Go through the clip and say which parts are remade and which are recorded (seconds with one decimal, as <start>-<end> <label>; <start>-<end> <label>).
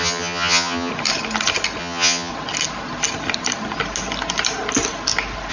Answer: 0.0-0.9 remade; 0.9-1.8 recorded; 1.8-2.3 remade; 2.3-5.5 recorded